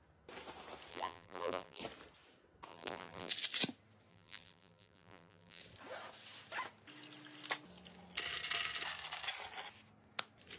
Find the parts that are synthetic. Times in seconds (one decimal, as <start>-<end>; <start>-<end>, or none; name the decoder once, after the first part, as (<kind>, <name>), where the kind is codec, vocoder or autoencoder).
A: 0.9-1.8 (vocoder, BigVGAN v2); 2.7-3.3; 4.1-5.6